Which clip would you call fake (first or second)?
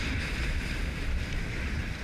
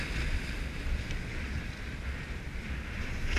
first